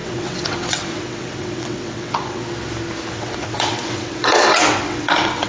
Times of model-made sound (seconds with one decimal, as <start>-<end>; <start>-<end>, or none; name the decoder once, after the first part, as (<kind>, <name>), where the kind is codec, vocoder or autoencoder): 0.0-2.4 (vocoder, WaveNeXt); 3.1-5.5